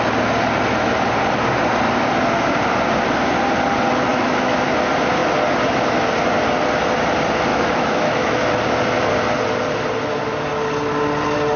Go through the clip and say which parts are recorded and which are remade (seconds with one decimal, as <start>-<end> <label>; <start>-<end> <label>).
0.0-4.1 recorded; 4.1-4.7 remade; 4.7-7.5 recorded; 7.5-8.4 remade; 8.4-11.6 recorded